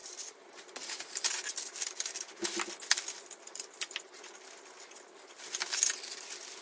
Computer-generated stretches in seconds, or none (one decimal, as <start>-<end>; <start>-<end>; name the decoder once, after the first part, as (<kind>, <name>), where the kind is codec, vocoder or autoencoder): none